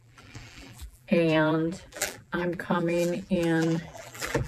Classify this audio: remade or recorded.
remade